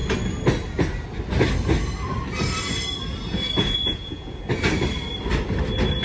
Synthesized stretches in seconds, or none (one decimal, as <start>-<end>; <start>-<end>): 3.6-4.4